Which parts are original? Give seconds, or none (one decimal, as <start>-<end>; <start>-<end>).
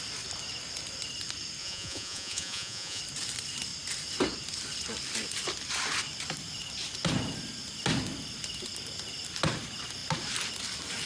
0.0-1.6; 3.0-11.1